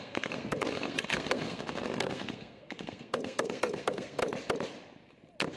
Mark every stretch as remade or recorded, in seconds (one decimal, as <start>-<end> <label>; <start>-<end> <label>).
0.0-4.2 remade; 4.2-5.6 recorded